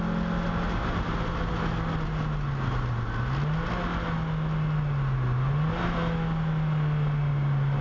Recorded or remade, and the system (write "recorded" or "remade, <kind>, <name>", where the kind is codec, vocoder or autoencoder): recorded